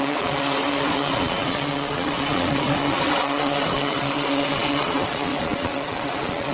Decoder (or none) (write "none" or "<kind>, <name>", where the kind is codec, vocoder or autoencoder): vocoder, Vocos